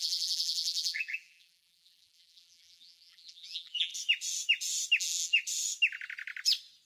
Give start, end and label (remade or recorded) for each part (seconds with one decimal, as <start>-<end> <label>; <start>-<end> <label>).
0.0-3.9 remade; 3.9-5.0 recorded; 5.0-5.4 remade; 5.4-6.9 recorded